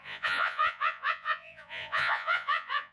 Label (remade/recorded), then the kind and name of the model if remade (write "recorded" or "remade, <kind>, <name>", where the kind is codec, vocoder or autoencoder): remade, vocoder, Vocos